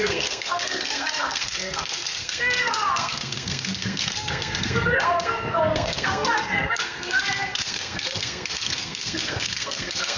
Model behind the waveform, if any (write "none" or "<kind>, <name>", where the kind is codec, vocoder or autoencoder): codec, SNAC